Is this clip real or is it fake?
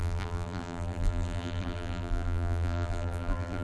fake